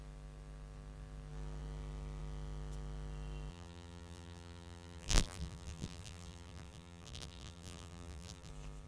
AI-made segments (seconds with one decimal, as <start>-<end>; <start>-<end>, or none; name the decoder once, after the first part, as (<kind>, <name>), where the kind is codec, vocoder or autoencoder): 3.5-8.5 (vocoder, BigVGAN v2)